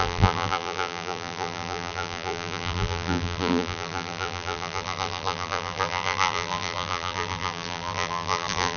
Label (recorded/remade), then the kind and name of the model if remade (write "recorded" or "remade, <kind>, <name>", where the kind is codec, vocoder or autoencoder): remade, vocoder, BigVGAN v2